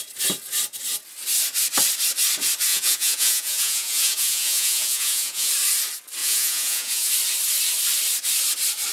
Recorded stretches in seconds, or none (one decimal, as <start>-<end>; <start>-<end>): 0.0-2.7; 5.5-6.2; 7.1-8.9

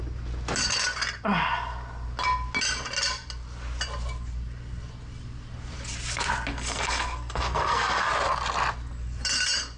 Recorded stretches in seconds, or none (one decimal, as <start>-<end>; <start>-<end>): 0.0-6.5; 8.1-9.8

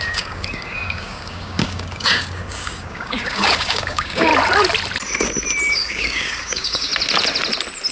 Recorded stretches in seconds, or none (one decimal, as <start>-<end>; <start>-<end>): 4.3-5.7; 6.9-7.9

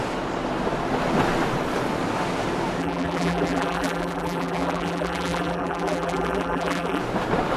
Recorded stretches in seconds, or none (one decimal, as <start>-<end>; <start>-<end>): 0.0-2.8; 7.0-7.6

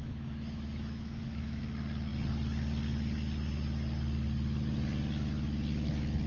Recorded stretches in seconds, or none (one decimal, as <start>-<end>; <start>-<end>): 1.6-6.3

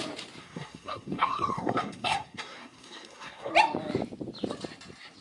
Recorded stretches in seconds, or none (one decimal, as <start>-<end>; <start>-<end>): 0.0-0.4; 3.5-5.2